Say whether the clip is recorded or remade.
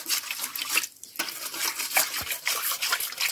recorded